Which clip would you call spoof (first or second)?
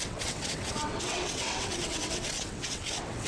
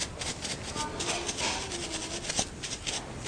first